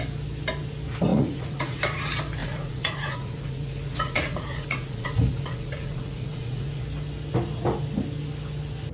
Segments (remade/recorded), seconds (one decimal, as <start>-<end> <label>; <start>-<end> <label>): 0.0-1.1 recorded; 1.1-1.8 remade; 1.8-2.4 recorded; 2.4-6.8 remade; 6.8-8.9 recorded